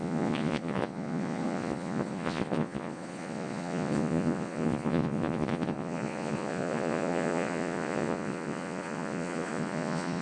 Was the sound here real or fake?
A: fake